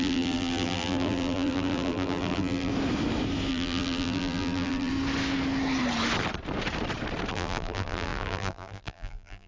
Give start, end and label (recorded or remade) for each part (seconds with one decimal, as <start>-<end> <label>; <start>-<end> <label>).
0.0-2.7 remade; 2.7-3.5 recorded; 3.5-4.9 remade; 4.9-7.3 recorded; 7.3-9.5 remade